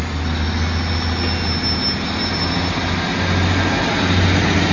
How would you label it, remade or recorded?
recorded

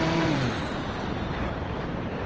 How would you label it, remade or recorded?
remade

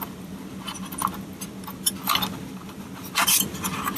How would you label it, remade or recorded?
recorded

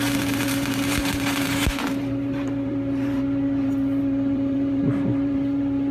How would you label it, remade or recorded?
remade